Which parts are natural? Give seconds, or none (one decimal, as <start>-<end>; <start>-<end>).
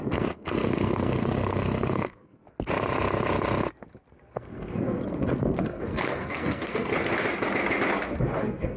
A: 2.4-4.3; 6.9-8.4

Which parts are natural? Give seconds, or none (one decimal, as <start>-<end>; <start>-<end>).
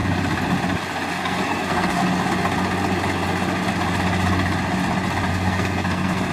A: 0.0-1.1; 2.0-5.3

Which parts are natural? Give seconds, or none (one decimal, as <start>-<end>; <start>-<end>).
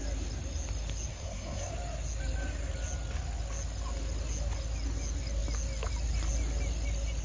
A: 0.0-1.1; 1.7-7.2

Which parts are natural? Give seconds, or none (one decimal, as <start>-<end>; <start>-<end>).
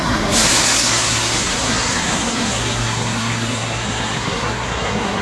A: none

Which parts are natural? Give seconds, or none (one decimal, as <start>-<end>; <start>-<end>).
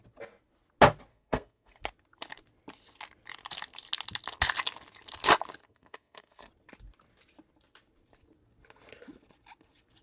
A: 0.0-1.1; 1.8-5.6; 6.5-10.0